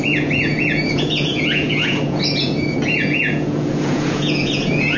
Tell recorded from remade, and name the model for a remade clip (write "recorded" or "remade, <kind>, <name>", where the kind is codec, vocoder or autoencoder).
remade, vocoder, Vocos